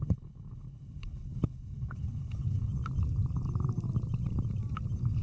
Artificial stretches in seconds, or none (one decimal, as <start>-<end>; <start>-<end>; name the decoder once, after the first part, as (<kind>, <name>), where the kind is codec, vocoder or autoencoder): 0.0-2.7 (codec, HILCodec)